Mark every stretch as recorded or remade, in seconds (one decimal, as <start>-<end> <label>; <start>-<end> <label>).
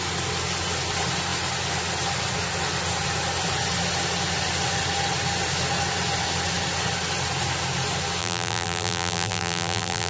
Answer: 0.0-8.2 recorded; 8.2-10.1 remade